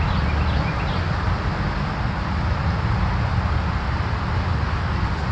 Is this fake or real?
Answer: real